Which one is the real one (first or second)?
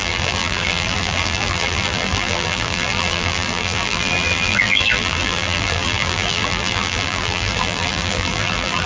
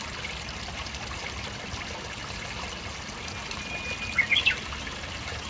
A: second